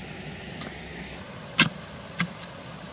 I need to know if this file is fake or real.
real